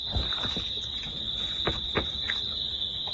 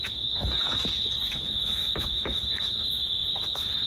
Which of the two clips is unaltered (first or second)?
first